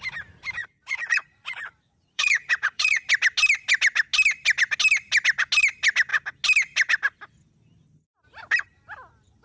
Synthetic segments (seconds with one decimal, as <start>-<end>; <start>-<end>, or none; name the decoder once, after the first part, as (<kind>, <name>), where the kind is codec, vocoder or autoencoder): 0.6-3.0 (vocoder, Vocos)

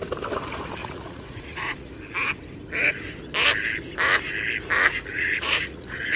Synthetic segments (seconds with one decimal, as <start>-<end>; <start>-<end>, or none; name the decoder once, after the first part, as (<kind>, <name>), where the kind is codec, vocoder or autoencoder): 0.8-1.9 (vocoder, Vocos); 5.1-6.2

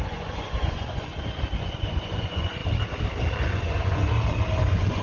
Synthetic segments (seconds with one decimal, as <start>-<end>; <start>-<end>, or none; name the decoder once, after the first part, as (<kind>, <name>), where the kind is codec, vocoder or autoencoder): 0.0-1.1 (vocoder, Vocos); 1.6-2.6; 3.4-4.1; 4.6-5.0